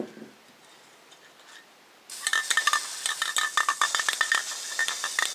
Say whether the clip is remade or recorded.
recorded